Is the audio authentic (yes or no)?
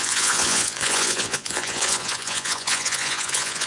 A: no